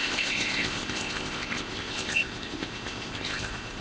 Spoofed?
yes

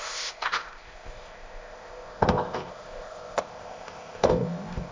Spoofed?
yes